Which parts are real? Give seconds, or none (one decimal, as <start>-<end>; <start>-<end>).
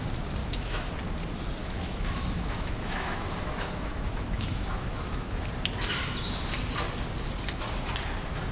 0.0-0.4; 0.9-1.6; 5.5-8.5